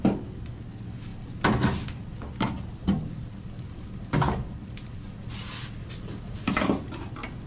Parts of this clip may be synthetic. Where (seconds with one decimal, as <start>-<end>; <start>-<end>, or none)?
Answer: none